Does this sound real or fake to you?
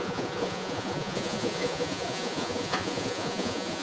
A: fake